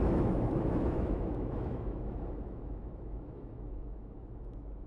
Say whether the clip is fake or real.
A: fake